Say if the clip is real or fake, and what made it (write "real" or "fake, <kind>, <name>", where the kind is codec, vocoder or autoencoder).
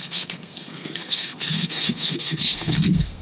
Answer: fake, codec, SNAC